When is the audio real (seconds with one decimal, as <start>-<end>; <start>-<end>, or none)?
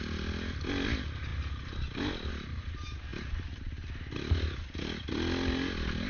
0.0-6.1